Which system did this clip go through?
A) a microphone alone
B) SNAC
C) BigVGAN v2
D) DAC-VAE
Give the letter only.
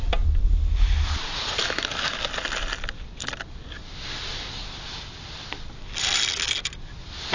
A